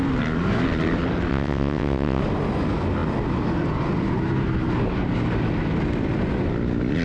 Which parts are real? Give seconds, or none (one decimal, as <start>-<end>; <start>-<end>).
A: 0.0-1.3; 2.2-7.0